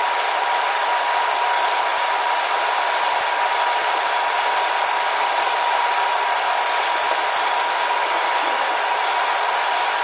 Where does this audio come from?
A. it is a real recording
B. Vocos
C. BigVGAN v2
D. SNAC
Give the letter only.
A